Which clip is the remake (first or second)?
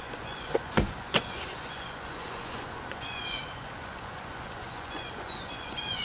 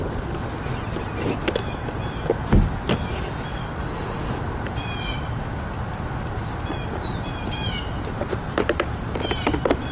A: first